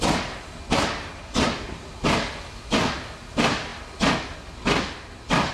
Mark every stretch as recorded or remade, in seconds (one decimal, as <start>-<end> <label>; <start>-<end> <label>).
0.0-5.5 recorded